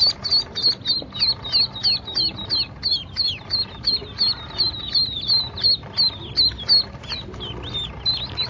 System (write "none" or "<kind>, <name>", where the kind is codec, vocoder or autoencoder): none